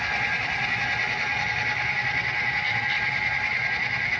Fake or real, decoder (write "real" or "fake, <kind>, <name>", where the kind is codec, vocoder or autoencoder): real